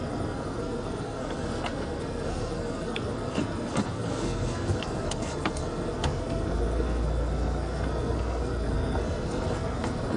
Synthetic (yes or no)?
yes